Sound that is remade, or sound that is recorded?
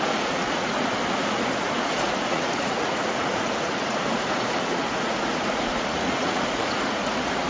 remade